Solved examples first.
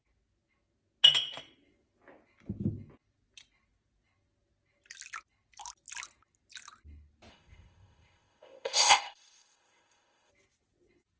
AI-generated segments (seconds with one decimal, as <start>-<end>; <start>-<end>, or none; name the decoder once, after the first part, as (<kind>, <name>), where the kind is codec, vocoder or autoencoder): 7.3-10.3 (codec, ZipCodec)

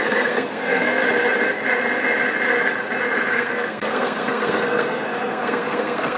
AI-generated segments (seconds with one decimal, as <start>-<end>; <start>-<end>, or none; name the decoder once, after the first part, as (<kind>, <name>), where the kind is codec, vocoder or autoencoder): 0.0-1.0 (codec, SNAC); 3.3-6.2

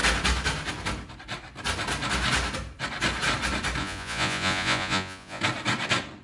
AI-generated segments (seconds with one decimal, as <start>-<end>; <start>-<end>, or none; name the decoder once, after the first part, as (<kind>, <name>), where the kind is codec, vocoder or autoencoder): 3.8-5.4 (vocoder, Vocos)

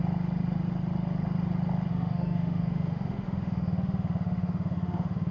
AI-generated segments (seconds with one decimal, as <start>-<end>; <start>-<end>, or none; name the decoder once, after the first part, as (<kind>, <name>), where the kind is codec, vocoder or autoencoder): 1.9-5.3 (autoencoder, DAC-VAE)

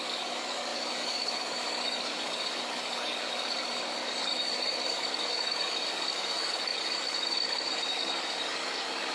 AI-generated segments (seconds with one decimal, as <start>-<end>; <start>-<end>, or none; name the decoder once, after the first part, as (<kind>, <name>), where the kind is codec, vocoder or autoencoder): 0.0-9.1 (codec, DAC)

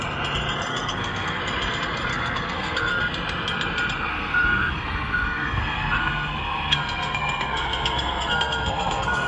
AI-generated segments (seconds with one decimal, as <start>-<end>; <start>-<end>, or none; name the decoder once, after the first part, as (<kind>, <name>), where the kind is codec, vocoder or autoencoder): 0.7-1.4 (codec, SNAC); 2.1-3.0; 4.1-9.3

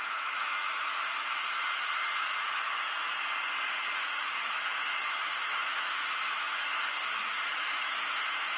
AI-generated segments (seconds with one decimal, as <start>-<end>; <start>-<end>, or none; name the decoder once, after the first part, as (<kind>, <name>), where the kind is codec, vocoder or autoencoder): 0.0-3.1 (autoencoder, DAC-VAE); 4.0-8.6